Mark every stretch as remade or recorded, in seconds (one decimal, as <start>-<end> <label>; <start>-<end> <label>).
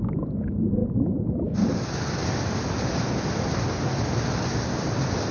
0.0-5.3 recorded